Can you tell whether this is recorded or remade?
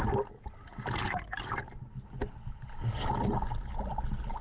recorded